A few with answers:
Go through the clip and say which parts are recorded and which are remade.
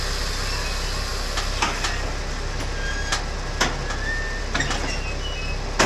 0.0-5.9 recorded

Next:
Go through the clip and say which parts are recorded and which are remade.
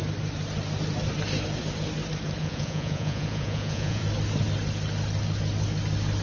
0.0-2.4 recorded; 2.4-4.0 remade; 4.0-6.2 recorded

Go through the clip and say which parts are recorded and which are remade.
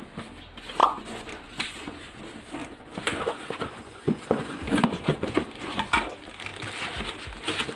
0.0-0.8 recorded; 0.8-2.2 remade; 2.2-2.6 recorded; 2.6-5.9 remade; 5.9-7.8 recorded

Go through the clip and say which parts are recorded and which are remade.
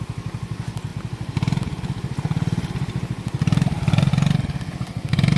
0.0-5.4 recorded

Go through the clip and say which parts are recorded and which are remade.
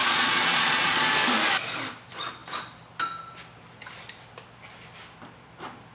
0.0-1.0 remade; 1.0-5.9 recorded